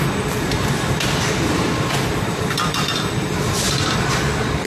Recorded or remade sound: remade